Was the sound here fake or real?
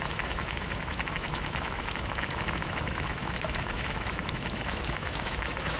fake